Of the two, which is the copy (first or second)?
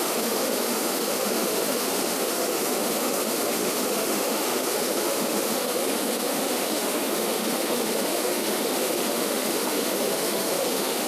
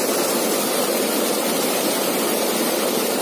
first